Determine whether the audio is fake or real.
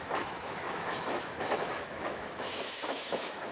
fake